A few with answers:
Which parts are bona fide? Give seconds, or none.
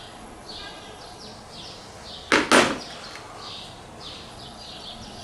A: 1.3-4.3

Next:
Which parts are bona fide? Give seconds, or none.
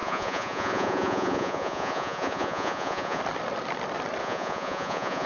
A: 3.2-4.2